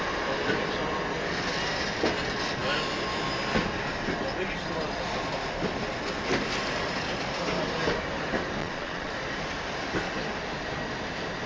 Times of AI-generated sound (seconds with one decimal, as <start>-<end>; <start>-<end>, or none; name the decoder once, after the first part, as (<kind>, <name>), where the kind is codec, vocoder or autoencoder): 8.6-9.1 (vocoder, Vocos)